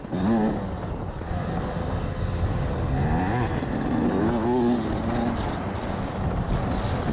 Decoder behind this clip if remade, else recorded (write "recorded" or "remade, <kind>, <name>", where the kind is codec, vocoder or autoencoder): recorded